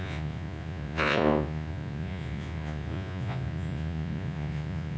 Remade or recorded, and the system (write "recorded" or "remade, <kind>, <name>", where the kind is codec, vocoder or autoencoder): remade, vocoder, Vocos